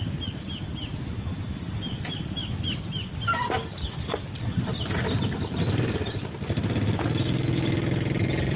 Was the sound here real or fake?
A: real